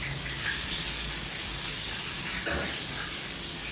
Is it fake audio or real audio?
fake